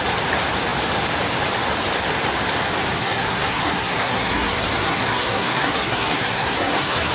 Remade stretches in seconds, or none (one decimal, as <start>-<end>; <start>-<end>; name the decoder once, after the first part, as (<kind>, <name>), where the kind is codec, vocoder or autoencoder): 3.0-7.1 (codec, SNAC)

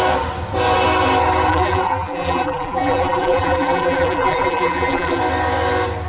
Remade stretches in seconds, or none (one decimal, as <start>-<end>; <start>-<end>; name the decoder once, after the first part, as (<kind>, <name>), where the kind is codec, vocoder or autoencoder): 1.5-5.2 (vocoder, BigVGAN v2)

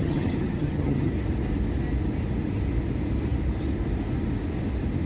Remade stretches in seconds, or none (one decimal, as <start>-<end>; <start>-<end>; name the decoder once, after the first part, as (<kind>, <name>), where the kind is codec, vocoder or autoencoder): 0.0-1.1 (vocoder, HiFi-GAN)

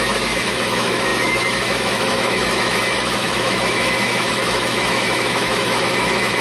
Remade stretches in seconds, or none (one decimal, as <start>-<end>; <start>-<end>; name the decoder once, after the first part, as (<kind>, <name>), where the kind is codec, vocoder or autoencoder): 0.0-6.4 (autoencoder, DAC-VAE)

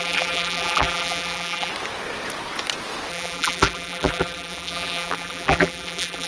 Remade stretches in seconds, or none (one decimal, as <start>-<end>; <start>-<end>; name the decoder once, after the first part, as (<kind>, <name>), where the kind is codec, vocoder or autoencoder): 0.0-1.7 (vocoder, BigVGAN v2); 3.1-6.3

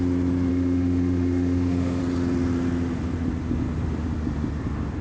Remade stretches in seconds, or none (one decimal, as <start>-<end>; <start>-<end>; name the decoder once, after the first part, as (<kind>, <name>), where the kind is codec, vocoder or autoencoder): 0.5-2.0 (autoencoder, DAC-VAE)

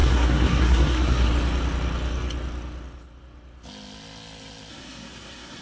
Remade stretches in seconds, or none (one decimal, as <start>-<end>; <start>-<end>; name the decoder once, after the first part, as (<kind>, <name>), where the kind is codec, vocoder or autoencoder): 0.0-1.3 (codec, SNAC); 4.7-5.6